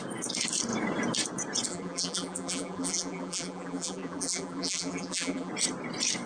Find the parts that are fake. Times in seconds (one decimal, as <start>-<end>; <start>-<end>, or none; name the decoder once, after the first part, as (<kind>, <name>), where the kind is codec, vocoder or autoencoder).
1.7-5.5 (vocoder, BigVGAN v2)